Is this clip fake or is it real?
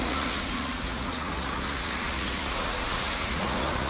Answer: fake